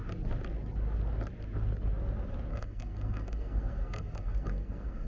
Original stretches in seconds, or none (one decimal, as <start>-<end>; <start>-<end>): 0.0-2.5